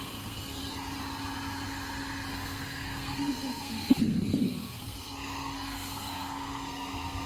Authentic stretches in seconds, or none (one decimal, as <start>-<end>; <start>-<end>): 0.6-2.3